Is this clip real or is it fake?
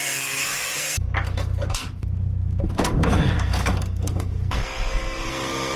fake